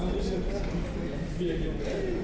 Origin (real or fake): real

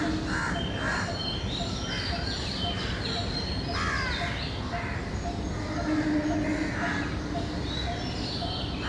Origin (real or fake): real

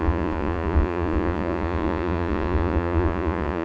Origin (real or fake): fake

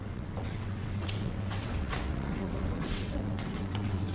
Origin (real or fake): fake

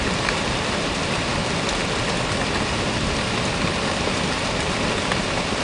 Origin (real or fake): real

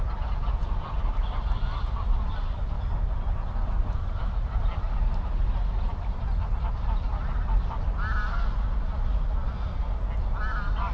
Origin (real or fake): real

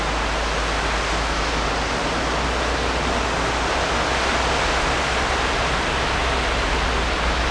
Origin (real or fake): real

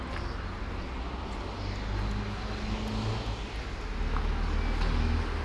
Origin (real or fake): real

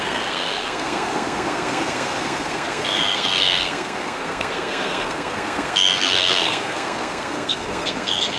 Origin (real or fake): fake